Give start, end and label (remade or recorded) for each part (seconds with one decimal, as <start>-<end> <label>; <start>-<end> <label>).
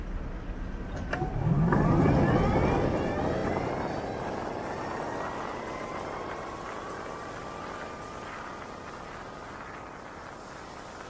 0.0-11.1 recorded